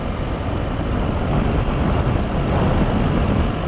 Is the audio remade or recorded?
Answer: recorded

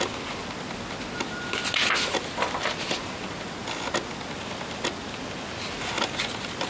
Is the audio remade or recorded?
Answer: recorded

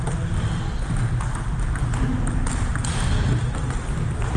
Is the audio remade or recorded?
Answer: recorded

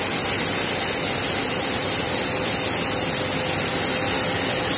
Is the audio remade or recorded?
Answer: recorded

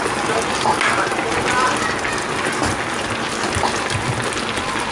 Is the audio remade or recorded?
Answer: recorded